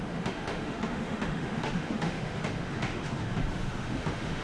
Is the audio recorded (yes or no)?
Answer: no